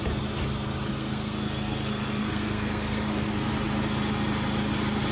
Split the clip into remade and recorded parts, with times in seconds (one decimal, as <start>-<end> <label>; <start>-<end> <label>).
0.0-0.9 recorded; 0.9-3.5 remade; 3.5-5.1 recorded